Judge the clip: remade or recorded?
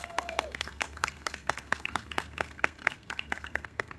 remade